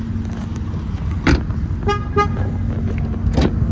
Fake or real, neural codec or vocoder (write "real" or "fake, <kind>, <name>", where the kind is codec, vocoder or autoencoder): real